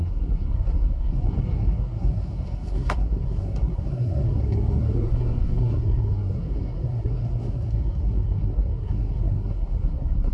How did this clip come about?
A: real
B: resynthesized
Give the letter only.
B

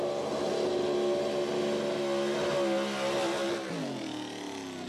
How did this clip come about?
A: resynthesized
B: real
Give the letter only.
B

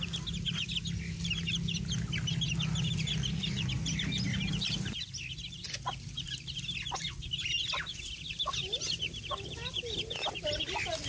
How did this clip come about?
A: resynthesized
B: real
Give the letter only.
B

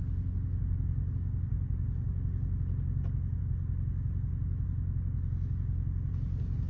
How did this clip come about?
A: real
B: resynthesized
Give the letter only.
A